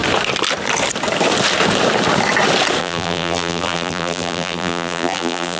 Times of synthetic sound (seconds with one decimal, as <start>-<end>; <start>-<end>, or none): 2.8-5.6